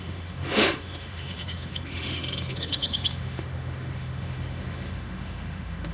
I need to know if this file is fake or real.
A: fake